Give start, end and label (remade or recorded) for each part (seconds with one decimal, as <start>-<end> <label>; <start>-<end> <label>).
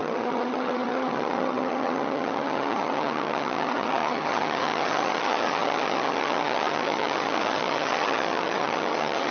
0.0-9.3 remade